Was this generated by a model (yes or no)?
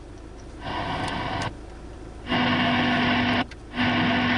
no